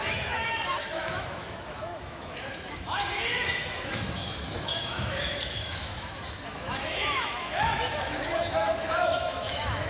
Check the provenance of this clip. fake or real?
fake